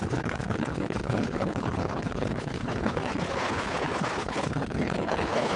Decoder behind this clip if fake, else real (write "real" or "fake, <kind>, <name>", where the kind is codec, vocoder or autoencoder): fake, codec, HILCodec